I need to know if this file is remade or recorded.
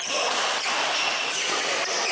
recorded